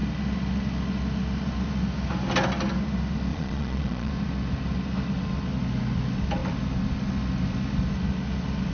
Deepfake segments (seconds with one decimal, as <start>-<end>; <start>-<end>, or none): 3.3-4.1